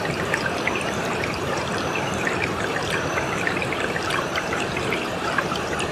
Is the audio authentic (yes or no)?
no